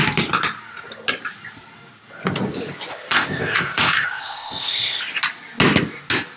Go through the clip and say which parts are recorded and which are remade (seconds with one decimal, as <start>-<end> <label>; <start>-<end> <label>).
0.0-2.9 recorded; 2.9-5.0 remade; 5.0-6.4 recorded